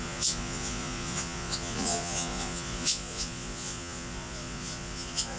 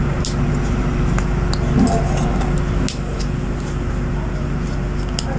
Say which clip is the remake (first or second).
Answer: first